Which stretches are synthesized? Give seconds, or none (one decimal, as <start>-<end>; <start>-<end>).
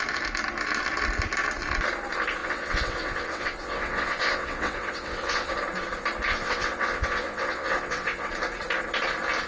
2.4-5.5; 6.3-8.3